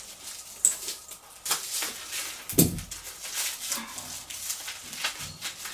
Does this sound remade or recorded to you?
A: recorded